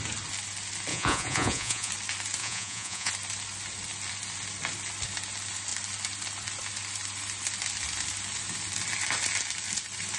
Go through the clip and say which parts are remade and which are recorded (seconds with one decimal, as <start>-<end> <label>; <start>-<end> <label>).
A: 0.0-0.9 recorded; 0.9-1.9 remade; 1.9-2.4 recorded; 2.4-3.1 remade; 3.1-10.2 recorded

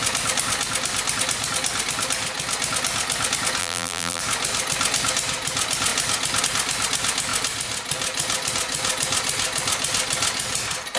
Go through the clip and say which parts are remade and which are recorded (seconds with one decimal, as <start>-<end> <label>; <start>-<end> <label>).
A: 0.0-3.6 recorded; 3.6-4.2 remade; 4.2-11.0 recorded